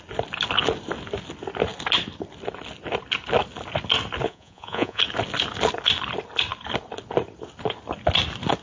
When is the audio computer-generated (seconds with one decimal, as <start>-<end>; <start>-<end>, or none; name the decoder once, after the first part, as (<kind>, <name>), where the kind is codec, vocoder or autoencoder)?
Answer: 4.3-5.0 (vocoder, Vocos)